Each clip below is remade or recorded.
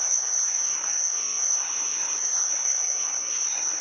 remade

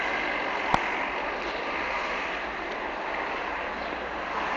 recorded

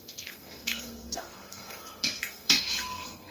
remade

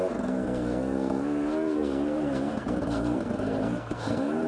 remade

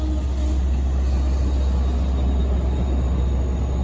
recorded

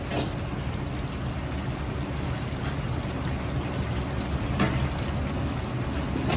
recorded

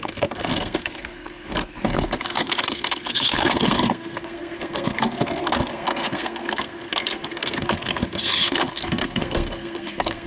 remade